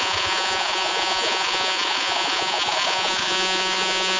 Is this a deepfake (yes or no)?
yes